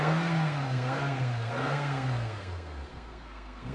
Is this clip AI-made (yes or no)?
yes